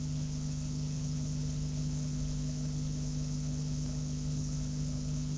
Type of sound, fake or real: fake